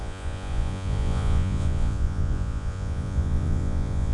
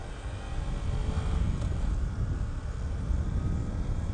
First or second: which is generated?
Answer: first